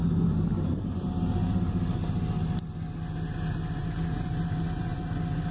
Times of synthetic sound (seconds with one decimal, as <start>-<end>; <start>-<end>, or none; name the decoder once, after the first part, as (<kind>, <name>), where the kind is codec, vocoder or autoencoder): 0.0-1.2 (vocoder, BigVGAN v2); 3.8-5.1